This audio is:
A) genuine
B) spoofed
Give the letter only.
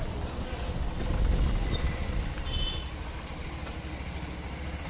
A